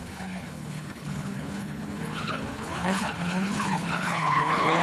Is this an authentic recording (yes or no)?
no